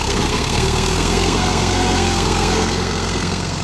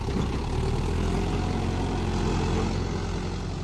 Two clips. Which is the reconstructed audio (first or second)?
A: first